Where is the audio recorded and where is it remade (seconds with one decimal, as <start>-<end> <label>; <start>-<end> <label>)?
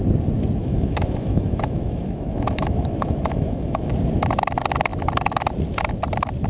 0.0-0.6 recorded; 0.6-3.9 remade; 3.9-6.5 recorded